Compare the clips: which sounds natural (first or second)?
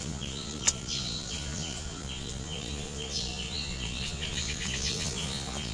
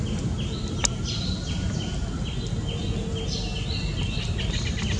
second